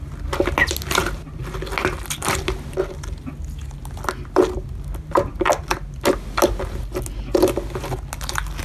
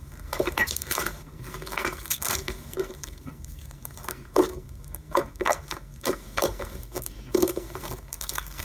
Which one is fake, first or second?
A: second